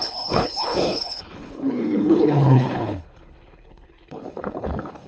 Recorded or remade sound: remade